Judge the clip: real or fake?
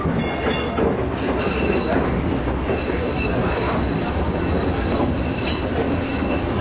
real